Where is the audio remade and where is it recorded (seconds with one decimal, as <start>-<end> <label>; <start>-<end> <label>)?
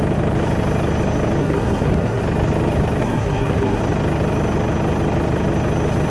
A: 0.0-1.4 recorded; 1.4-2.2 remade; 2.2-3.0 recorded; 3.0-3.8 remade; 3.8-6.1 recorded